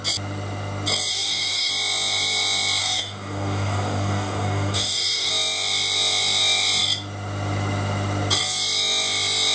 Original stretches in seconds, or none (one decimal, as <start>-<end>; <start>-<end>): 0.0-1.1; 1.7-2.8; 5.3-9.5